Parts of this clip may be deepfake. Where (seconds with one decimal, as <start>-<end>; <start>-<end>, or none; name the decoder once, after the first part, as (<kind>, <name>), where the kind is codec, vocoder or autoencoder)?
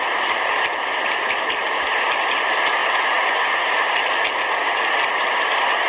none